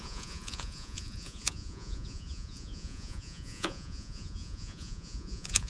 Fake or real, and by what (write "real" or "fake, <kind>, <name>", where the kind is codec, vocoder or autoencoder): fake, vocoder, Vocos